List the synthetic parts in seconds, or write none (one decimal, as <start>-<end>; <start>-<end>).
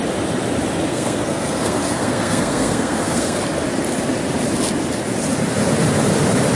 0.9-3.4